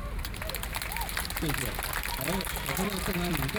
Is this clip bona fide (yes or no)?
no